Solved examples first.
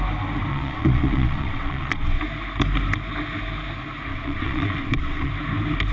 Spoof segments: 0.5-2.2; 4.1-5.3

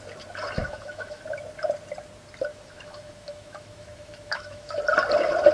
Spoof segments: 0.6-1.2; 2.5-4.8

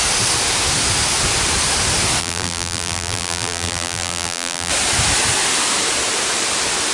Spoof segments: 2.2-4.7